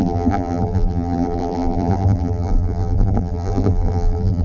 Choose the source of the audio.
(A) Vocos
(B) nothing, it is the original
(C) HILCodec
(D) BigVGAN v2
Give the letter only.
D